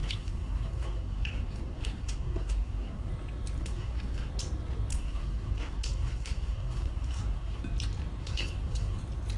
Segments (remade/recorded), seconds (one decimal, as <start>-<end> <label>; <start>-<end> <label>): 0.0-3.1 remade; 3.1-3.6 recorded; 3.6-4.3 remade; 4.3-4.9 recorded; 4.9-7.6 remade; 7.6-8.2 recorded; 8.2-9.0 remade; 9.0-9.4 recorded